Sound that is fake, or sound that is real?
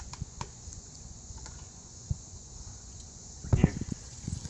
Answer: fake